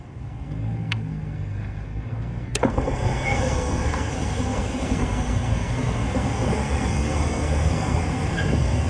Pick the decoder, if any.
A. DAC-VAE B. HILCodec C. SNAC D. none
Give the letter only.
C